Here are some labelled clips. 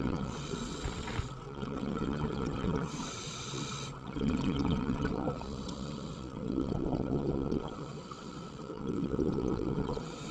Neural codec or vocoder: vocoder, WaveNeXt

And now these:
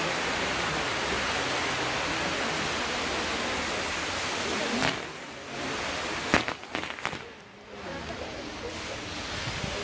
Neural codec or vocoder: none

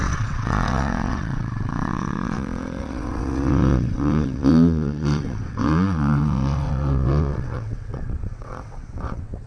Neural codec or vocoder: vocoder, WaveNeXt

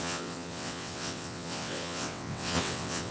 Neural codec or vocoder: vocoder, WaveNeXt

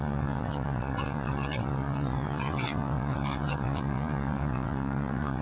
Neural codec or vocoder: vocoder, WaveNeXt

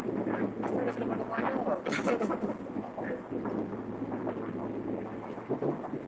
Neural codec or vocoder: none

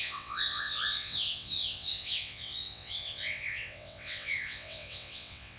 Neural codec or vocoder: vocoder, WaveNeXt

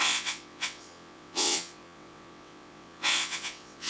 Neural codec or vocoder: vocoder, WaveNeXt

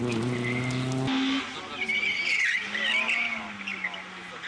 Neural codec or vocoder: none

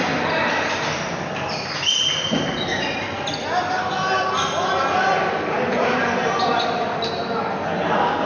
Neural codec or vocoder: none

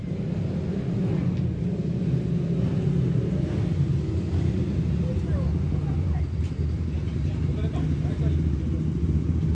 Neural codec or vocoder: none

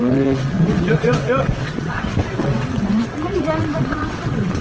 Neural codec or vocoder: vocoder, WaveNeXt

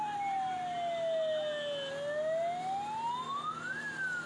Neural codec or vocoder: none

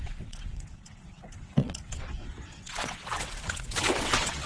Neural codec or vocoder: vocoder, WaveNeXt